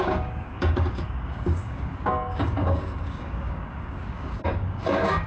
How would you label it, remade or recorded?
remade